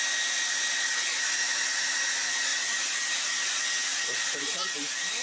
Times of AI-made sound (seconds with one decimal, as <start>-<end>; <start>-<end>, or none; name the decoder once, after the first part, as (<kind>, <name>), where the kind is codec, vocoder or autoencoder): 2.5-3.3 (vocoder, BigVGAN v2); 3.8-5.2